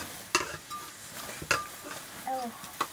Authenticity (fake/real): real